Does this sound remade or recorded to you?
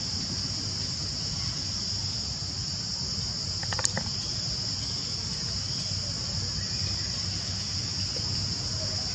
recorded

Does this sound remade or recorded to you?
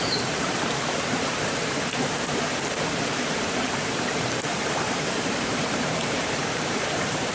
remade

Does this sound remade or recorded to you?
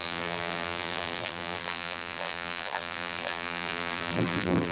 remade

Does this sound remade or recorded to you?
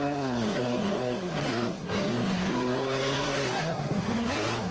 remade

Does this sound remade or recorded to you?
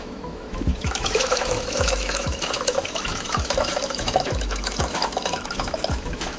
remade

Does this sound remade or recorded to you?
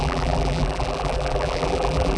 remade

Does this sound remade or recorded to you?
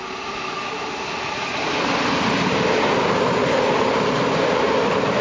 recorded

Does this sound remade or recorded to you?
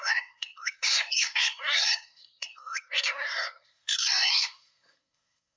remade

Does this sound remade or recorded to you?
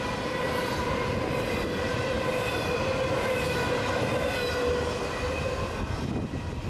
recorded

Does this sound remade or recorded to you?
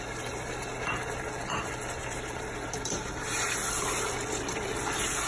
recorded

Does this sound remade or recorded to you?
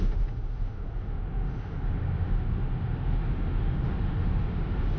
remade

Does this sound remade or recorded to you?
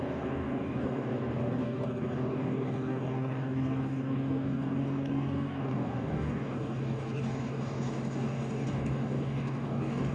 remade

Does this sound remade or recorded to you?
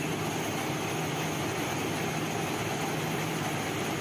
recorded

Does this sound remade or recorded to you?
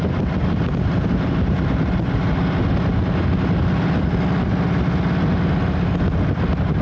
recorded